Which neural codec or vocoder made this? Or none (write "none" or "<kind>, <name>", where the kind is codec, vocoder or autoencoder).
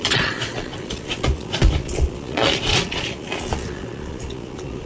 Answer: vocoder, Vocos